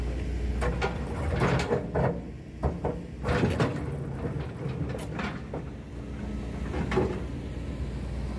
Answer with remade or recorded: recorded